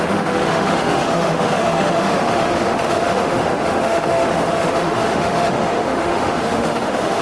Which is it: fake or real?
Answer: fake